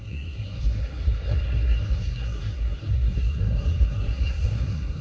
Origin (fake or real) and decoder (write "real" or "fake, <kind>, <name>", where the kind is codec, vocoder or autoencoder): fake, codec, SNAC